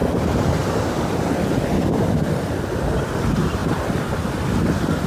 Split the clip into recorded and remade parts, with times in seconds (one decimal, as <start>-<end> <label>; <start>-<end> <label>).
0.0-3.1 remade; 3.1-3.6 recorded; 3.6-4.2 remade; 4.2-5.1 recorded